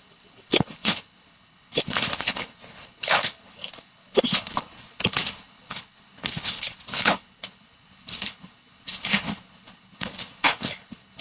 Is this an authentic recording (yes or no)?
no